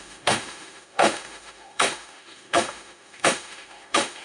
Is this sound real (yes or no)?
no